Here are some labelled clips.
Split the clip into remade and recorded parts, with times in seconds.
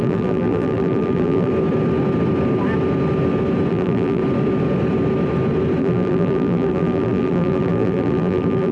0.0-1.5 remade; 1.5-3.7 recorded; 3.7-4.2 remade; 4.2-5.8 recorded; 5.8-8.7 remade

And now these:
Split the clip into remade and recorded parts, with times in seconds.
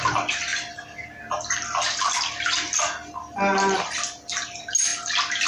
0.0-0.5 recorded; 0.5-3.8 remade; 3.8-5.5 recorded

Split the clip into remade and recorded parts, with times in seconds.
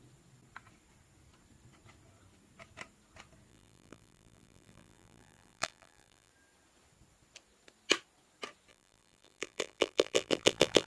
0.0-3.5 recorded; 3.5-6.3 remade; 6.3-8.7 recorded; 8.7-10.9 remade